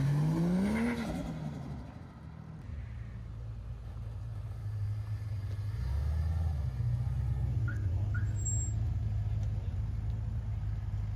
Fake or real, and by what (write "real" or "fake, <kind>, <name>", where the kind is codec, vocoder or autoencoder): real